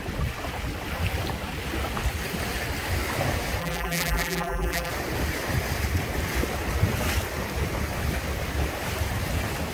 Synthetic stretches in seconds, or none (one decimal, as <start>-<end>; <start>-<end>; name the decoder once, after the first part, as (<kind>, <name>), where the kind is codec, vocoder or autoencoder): 3.6-4.9 (vocoder, BigVGAN v2)